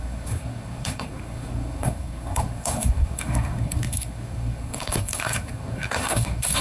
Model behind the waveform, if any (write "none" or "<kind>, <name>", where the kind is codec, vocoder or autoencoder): codec, SNAC